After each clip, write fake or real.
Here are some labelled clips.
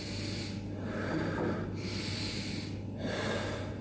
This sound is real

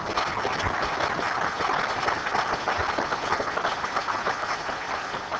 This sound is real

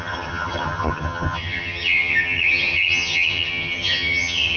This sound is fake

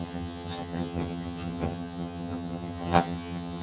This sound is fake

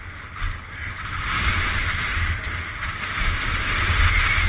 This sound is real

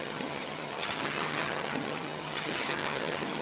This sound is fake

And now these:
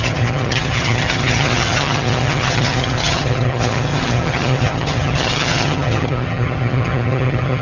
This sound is fake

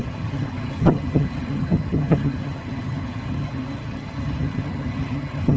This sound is fake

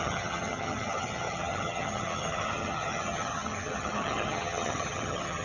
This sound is fake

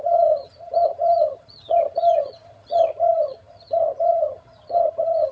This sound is fake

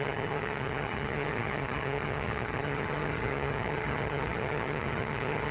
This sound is fake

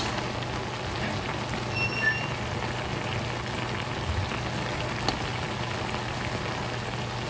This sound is real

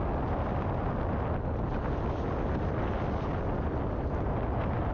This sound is real